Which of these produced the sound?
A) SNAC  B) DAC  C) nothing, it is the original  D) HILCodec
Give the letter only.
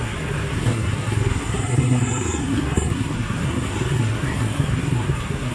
A